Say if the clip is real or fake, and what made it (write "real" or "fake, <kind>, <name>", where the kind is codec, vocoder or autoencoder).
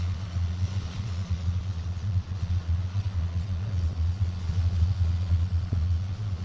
fake, vocoder, Vocos